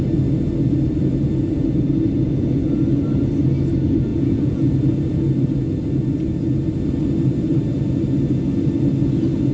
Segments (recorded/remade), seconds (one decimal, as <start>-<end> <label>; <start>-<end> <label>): 0.0-4.1 recorded; 4.1-4.7 remade; 4.7-9.5 recorded